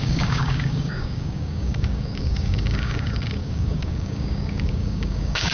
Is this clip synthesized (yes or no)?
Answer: yes